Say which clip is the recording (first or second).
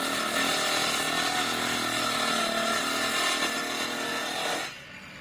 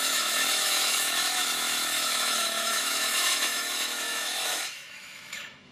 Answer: first